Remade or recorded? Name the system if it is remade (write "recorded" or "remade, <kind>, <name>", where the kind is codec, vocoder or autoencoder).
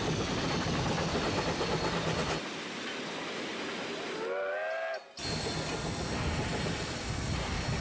recorded